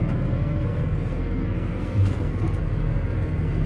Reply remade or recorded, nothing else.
remade